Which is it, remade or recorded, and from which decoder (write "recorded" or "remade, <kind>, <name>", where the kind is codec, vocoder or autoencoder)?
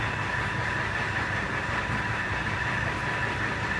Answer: remade, vocoder, BigVGAN v2